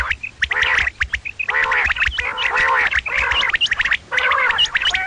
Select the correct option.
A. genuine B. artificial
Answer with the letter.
A